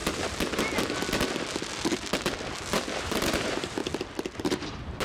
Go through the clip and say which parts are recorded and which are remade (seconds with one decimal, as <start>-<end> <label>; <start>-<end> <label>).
0.0-3.0 recorded; 3.0-3.8 remade; 3.8-4.4 recorded; 4.4-5.0 remade